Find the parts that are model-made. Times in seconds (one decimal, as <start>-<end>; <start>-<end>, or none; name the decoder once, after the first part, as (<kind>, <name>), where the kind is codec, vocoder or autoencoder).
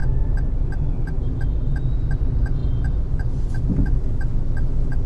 0.0-1.4 (vocoder, BigVGAN v2)